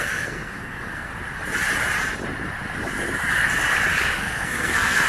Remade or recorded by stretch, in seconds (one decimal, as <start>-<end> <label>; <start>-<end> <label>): 0.0-1.1 remade; 1.1-4.2 recorded; 4.2-5.1 remade